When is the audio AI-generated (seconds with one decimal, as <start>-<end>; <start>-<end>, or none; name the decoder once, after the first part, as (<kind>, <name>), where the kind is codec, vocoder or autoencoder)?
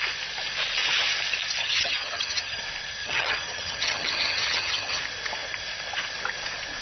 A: 1.6-2.6 (vocoder, HiFi-GAN); 3.0-5.0